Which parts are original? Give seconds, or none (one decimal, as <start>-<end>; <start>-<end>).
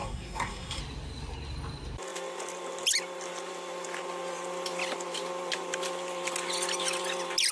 0.8-7.5